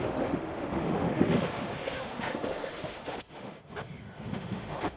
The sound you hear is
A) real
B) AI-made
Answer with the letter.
B